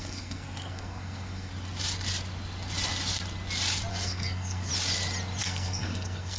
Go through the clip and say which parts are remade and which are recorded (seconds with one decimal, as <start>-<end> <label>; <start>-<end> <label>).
0.0-1.5 remade; 1.5-3.9 recorded; 3.9-4.7 remade; 4.7-5.4 recorded; 5.4-6.4 remade